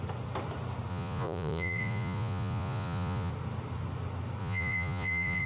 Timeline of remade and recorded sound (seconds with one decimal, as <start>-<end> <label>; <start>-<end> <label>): 0.0-0.9 recorded; 0.9-3.3 remade; 3.3-4.4 recorded; 4.4-5.5 remade